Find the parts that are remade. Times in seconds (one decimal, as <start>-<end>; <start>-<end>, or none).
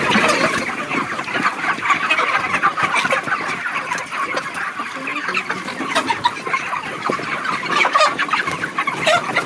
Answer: none